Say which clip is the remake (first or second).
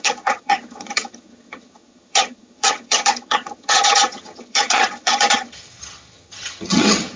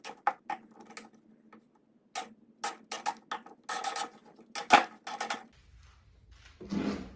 first